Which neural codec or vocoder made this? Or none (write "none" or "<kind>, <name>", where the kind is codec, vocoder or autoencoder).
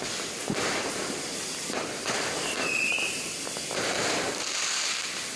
vocoder, BigVGAN v2